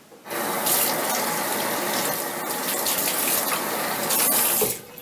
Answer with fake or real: real